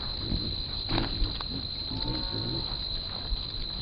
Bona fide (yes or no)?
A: yes